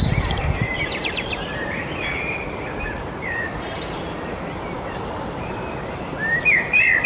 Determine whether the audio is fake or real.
fake